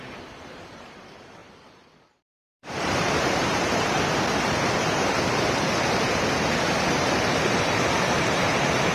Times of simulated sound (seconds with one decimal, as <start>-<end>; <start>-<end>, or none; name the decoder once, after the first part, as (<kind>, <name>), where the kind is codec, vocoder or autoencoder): 0.0-8.9 (vocoder, BigVGAN v2)

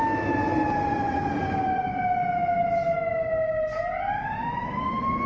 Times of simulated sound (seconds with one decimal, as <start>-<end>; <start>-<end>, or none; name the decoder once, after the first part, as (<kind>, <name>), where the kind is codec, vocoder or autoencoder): none

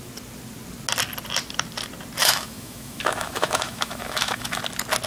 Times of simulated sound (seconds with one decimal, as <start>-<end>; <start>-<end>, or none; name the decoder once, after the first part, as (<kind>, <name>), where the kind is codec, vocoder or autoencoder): 2.2-4.6 (autoencoder, DAC-VAE)

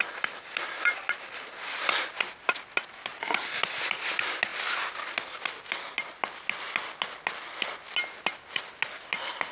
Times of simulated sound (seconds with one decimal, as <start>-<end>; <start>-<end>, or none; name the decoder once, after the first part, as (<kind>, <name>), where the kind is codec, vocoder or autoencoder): none

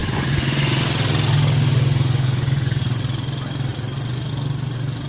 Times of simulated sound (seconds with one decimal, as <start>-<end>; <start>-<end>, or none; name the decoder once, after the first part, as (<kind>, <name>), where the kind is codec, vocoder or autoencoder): 0.0-0.8 (vocoder, Vocos); 1.7-3.0

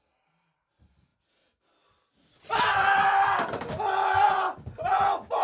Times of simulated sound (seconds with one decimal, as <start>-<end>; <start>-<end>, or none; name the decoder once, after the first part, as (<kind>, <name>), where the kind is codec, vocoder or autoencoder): none